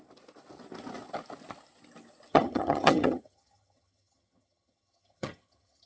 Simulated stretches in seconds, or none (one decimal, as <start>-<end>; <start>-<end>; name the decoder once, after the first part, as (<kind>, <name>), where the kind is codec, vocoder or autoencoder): 2.3-5.9 (vocoder, HiFi-GAN)